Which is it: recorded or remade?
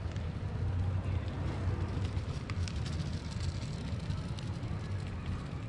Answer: remade